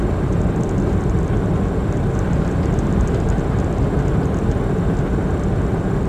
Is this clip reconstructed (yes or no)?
no